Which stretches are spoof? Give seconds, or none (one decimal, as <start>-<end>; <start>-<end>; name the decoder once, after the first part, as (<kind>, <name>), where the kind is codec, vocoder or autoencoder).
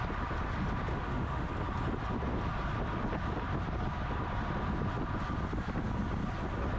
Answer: 0.9-1.5 (autoencoder, DAC-VAE)